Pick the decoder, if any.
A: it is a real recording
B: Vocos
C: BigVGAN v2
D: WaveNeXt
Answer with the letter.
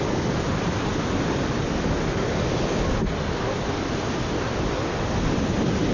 A